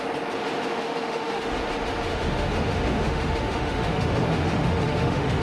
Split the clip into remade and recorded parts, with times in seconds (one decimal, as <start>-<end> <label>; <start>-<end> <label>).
0.0-0.7 recorded; 0.7-1.6 remade; 1.6-2.1 recorded; 2.1-5.4 remade